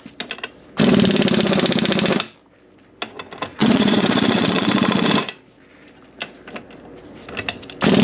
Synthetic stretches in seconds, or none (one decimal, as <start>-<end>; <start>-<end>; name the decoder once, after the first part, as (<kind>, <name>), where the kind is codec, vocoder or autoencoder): 3.5-5.1 (vocoder, Vocos)